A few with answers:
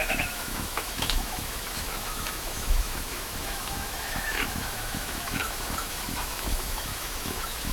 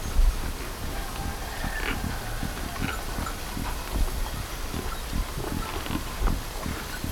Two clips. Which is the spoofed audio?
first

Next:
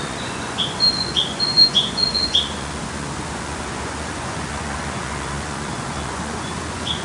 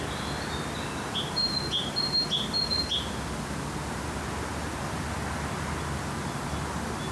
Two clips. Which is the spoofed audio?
first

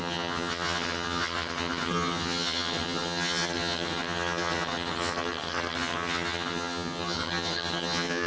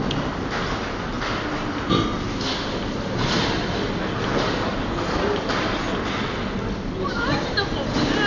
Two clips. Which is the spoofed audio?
first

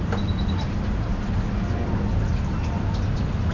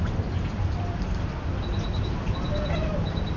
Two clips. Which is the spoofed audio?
second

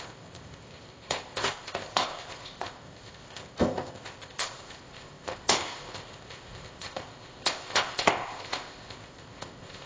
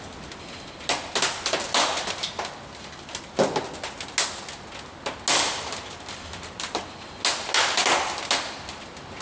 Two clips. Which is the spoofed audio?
first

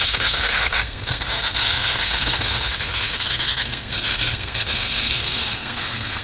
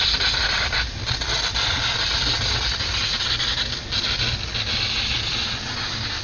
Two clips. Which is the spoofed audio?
first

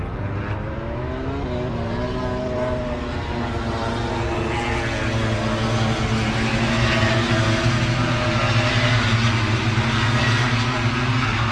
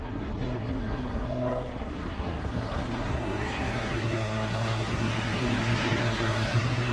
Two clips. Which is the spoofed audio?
second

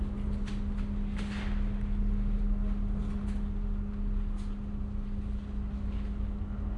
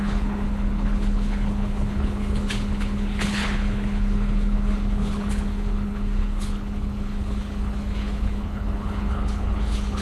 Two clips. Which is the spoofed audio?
second